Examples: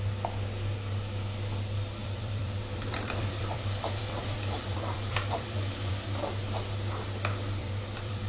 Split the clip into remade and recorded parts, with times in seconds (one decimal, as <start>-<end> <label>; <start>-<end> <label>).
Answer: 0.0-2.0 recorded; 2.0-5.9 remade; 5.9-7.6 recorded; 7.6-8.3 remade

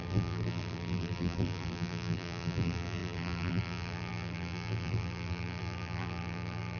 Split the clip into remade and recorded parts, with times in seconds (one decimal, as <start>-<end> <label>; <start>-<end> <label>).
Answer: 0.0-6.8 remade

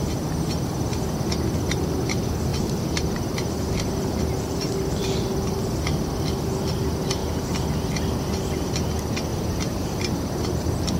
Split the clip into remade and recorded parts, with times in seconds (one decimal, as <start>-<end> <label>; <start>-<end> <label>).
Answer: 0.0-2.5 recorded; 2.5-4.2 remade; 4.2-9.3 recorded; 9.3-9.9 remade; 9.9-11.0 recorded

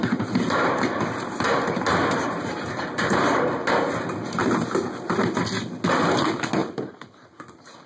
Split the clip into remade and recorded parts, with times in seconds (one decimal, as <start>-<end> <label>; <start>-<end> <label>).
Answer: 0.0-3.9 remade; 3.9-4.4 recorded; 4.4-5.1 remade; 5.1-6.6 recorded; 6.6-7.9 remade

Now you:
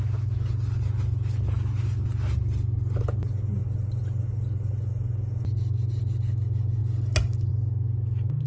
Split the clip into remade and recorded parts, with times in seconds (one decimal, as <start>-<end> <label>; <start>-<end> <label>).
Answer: 0.0-8.5 recorded

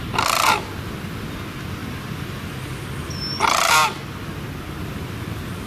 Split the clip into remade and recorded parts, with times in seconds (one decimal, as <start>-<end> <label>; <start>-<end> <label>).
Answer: 0.0-1.8 recorded; 1.8-2.9 remade; 2.9-5.7 recorded

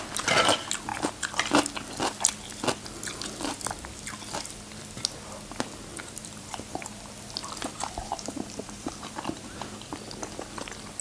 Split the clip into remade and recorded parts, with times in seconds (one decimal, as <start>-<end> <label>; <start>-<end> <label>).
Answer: 0.0-5.9 recorded; 5.9-6.8 remade; 6.8-7.4 recorded; 7.4-9.6 remade; 9.6-11.0 recorded

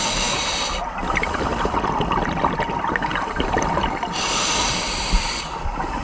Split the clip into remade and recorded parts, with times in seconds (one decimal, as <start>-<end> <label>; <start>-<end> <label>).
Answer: 0.0-3.1 recorded; 3.1-6.0 remade